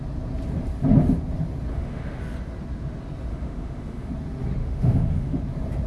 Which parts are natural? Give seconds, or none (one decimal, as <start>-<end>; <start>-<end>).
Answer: 0.0-1.7; 2.2-3.3; 4.1-4.6; 5.4-5.9